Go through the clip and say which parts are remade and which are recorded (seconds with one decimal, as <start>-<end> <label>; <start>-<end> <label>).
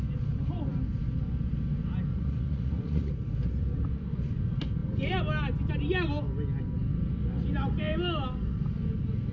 0.0-2.1 recorded; 2.1-3.1 remade; 3.1-9.3 recorded